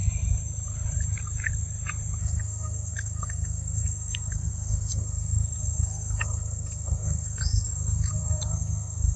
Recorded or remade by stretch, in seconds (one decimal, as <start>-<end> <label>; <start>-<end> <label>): 0.0-2.2 recorded; 2.2-9.2 remade